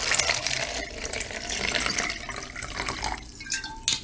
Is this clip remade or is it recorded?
recorded